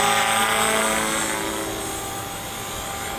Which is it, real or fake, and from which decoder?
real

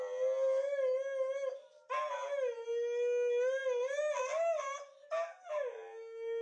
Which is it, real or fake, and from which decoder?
real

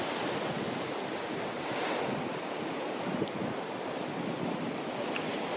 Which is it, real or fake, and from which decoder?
real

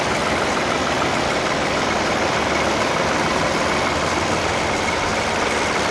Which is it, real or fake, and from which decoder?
real